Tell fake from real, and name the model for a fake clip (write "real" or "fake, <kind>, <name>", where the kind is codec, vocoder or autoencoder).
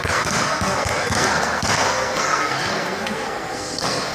fake, codec, SNAC